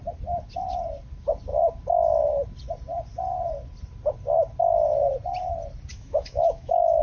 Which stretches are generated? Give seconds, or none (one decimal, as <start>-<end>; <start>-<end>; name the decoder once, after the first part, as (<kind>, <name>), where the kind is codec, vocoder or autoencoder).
5.9-7.0 (autoencoder, DAC-VAE)